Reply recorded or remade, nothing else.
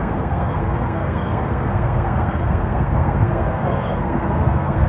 remade